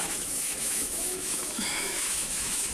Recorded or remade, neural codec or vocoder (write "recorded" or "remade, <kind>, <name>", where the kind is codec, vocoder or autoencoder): remade, autoencoder, DAC-VAE